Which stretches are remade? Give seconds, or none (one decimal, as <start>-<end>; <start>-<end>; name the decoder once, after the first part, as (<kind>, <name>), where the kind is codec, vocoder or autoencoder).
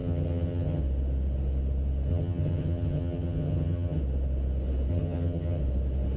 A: 0.0-0.8 (vocoder, HiFi-GAN); 2.1-4.0; 4.9-5.6